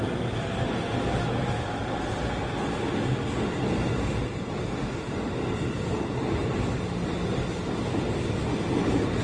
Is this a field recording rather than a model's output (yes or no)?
yes